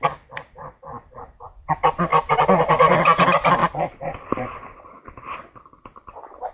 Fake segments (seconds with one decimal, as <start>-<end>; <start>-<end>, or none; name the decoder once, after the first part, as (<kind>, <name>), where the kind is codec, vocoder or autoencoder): 3.6-4.6 (vocoder, BigVGAN v2)